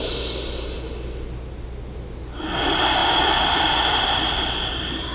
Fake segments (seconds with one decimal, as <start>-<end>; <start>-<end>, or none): 3.0-4.5

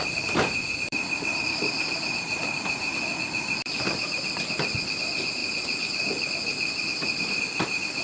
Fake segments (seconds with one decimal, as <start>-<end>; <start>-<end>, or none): 0.0-5.4; 7.2-8.0

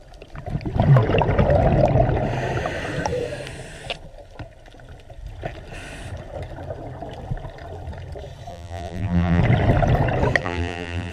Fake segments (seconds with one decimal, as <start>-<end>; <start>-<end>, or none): 8.5-9.4; 10.4-11.1

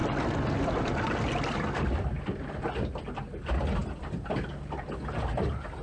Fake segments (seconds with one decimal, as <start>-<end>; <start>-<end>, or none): 0.0-2.6; 3.8-4.9